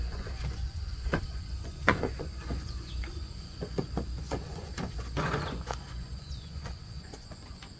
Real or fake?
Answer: fake